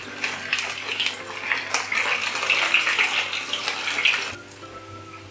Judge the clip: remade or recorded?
recorded